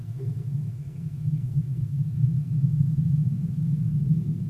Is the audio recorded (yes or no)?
no